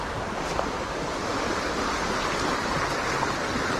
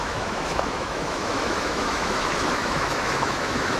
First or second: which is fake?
second